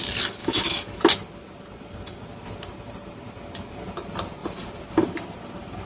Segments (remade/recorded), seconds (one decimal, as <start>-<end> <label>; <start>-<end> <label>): 0.0-0.4 recorded; 0.4-1.0 remade; 1.0-5.9 recorded